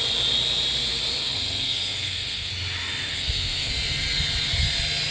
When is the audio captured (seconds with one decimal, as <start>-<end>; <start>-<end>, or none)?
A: 0.0-1.2; 2.5-3.1; 3.7-5.1